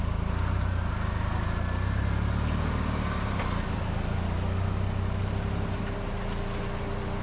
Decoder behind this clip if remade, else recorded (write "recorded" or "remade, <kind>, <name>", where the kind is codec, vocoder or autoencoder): recorded